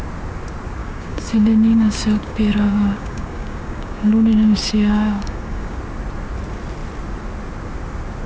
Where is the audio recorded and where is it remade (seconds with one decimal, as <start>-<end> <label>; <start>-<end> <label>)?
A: 0.0-0.8 recorded; 0.8-5.8 remade; 5.8-8.3 recorded